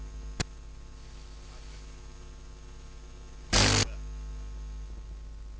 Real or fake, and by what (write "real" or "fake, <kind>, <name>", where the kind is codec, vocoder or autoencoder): real